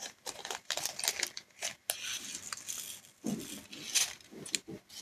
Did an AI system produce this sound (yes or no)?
no